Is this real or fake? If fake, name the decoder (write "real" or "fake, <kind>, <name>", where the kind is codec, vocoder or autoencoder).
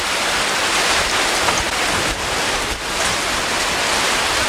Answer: real